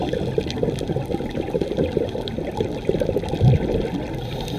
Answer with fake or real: real